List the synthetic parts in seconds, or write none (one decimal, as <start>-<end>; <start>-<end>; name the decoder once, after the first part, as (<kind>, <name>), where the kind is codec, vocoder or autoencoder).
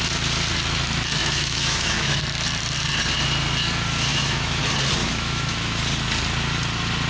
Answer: 1.2-2.2 (autoencoder, DAC-VAE); 4.1-4.6; 5.0-5.8